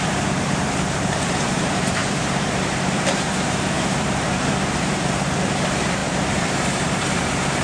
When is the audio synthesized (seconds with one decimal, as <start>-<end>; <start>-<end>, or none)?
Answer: 0.0-7.6